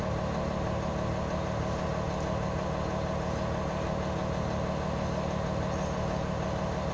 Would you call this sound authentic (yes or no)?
yes